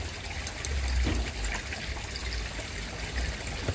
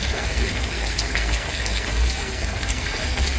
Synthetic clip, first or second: second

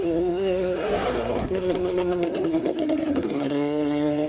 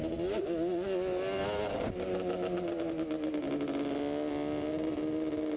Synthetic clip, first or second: first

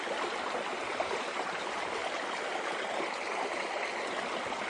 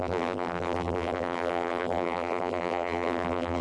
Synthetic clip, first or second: second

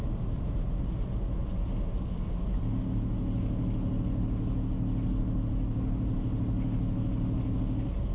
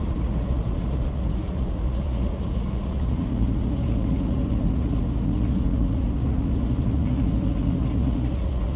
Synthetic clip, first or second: second